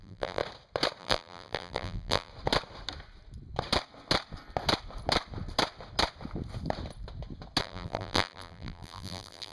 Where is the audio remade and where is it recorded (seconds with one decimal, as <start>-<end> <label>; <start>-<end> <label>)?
0.0-0.4 remade; 0.4-1.0 recorded; 1.0-2.3 remade; 2.3-7.6 recorded; 7.6-9.5 remade